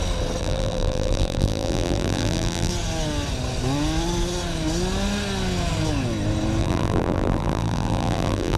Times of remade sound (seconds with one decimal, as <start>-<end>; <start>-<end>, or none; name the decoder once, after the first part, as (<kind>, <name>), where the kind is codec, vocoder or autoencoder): 0.4-2.7 (vocoder, BigVGAN v2); 6.6-8.6